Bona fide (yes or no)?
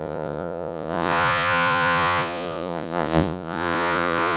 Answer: no